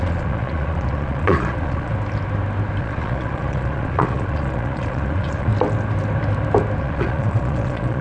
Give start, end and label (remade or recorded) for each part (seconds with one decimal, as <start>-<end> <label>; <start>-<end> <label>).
0.0-1.9 remade; 1.9-2.8 recorded; 2.8-5.5 remade; 5.5-6.8 recorded; 6.8-8.0 remade